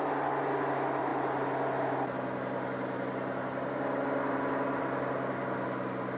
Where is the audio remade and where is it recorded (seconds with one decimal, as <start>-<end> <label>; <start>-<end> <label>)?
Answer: 0.0-6.2 recorded